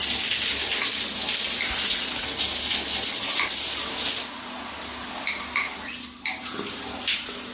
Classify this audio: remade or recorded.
recorded